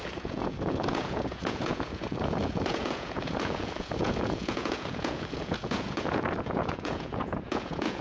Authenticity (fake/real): fake